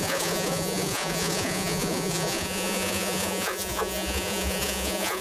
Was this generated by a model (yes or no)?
yes